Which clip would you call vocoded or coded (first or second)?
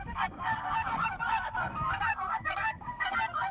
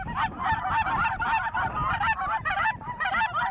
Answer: first